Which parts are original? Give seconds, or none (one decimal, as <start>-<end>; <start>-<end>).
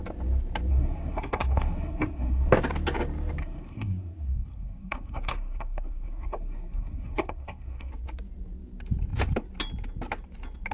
0.0-0.7; 2.5-3.4; 7.9-10.7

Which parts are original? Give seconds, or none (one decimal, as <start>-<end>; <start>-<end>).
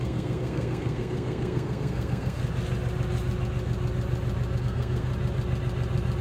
2.4-4.6; 5.1-6.2